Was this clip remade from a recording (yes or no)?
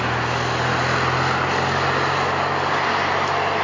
no